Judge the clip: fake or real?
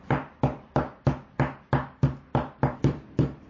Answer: fake